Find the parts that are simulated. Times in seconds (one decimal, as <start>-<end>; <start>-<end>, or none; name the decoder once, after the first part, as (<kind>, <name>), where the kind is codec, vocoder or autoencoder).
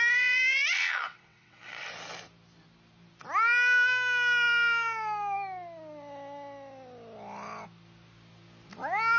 0.7-1.9 (vocoder, WaveNeXt)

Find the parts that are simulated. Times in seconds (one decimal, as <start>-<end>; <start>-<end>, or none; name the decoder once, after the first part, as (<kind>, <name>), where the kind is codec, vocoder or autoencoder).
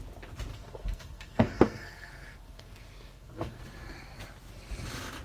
0.5-3.6 (codec, SNAC)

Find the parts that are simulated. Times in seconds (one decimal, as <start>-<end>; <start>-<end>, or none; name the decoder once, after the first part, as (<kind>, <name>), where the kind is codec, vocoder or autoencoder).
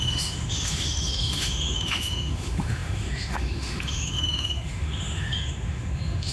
0.0-6.3 (autoencoder, DAC-VAE)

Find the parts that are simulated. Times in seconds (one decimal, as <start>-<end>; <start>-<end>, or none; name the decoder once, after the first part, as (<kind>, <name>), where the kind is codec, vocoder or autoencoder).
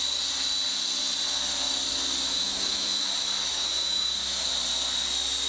2.3-3.1 (autoencoder, DAC-VAE); 3.5-4.5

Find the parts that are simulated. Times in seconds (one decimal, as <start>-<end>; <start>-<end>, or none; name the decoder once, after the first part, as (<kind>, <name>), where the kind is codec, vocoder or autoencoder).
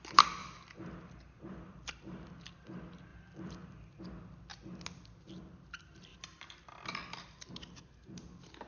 0.4-2.4 (vocoder, BigVGAN v2); 3.1-4.0; 6.1-7.5